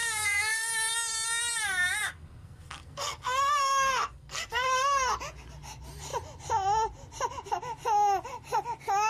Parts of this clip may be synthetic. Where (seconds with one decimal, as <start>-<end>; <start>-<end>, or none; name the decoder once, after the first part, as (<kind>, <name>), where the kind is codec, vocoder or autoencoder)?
0.0-0.7 (codec, SNAC); 2.0-5.2